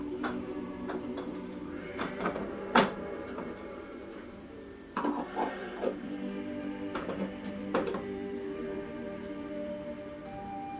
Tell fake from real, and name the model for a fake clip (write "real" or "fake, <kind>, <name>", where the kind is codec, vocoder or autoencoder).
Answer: fake, vocoder, BigVGAN v2